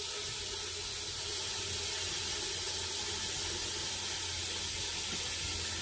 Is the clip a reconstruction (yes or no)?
no